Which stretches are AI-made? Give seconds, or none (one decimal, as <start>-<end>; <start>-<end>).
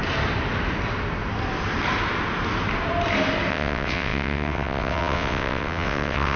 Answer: 3.5-6.4